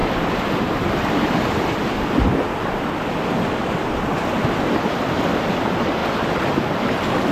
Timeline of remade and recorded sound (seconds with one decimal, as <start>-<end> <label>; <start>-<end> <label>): 0.0-4.0 remade; 4.0-7.3 recorded